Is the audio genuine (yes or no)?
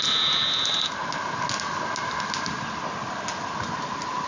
yes